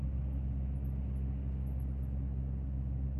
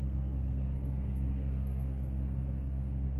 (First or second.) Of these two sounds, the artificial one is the second